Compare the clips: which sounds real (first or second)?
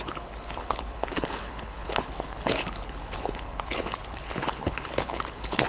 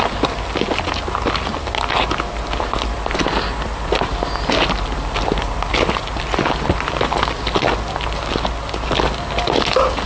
second